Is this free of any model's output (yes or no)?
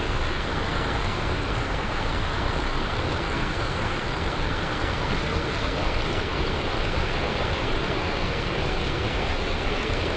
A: no